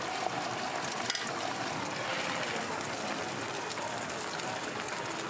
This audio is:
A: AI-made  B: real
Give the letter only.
B